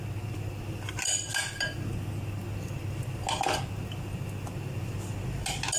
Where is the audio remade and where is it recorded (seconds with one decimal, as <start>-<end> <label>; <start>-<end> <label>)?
0.0-5.8 recorded